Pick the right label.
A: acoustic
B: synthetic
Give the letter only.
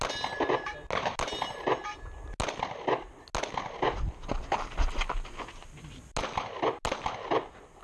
A